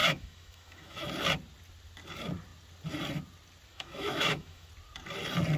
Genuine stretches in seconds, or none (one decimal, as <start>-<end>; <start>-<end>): 1.1-3.7; 4.7-5.6